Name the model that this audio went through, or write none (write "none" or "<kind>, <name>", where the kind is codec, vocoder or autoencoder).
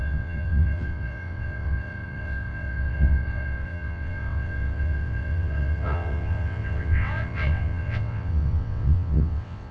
vocoder, WaveNeXt